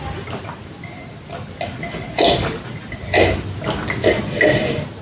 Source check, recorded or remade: recorded